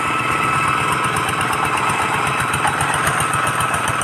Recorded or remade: recorded